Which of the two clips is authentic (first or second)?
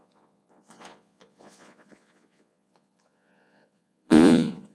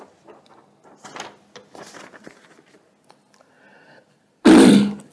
second